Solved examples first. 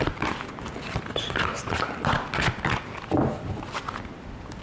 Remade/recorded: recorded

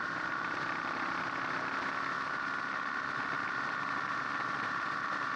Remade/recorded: recorded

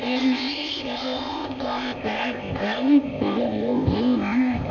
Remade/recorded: remade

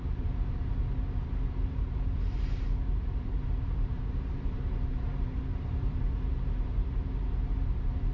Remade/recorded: remade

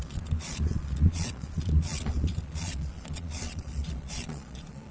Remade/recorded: remade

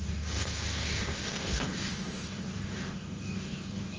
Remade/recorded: remade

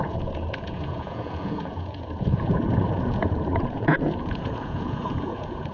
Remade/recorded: remade